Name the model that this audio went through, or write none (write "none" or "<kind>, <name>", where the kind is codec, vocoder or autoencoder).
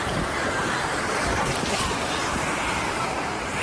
none